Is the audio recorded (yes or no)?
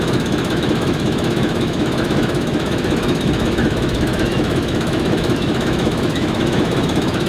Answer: no